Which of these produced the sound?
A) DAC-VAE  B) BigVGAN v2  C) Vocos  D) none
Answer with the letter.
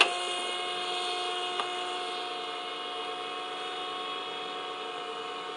D